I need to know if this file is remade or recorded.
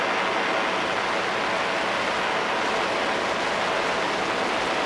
recorded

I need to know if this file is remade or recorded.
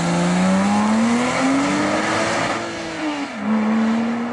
recorded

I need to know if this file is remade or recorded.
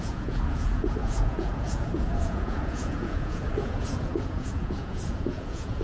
remade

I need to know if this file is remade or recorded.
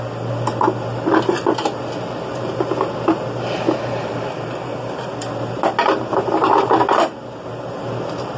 recorded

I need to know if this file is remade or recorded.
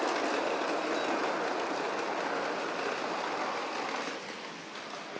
recorded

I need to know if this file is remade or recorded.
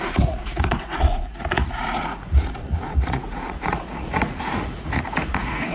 remade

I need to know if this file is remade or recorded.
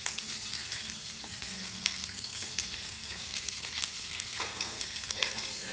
remade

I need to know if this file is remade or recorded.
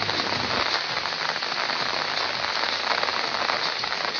recorded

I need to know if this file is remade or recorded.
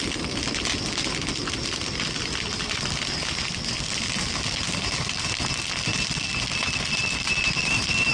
recorded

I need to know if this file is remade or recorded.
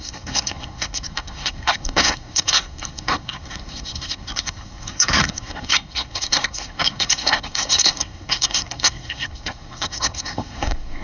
remade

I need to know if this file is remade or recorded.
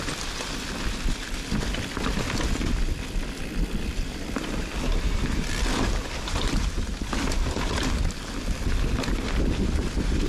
recorded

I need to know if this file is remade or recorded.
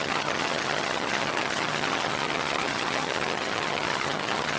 remade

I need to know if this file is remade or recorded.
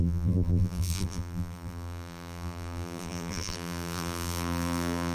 remade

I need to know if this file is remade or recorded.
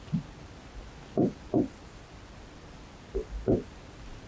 recorded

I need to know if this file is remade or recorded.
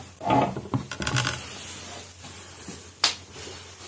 recorded